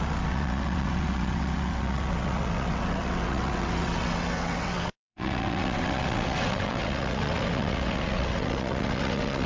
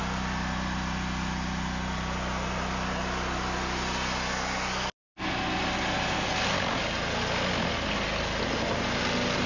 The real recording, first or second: second